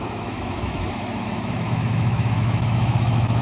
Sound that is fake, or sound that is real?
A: fake